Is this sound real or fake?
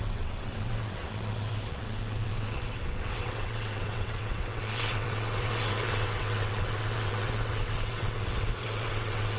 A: fake